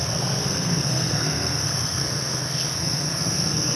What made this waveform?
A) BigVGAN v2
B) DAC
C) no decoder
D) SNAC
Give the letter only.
D